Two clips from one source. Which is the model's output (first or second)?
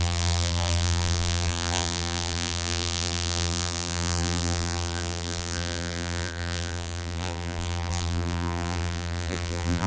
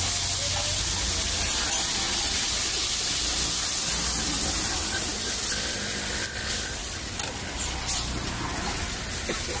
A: first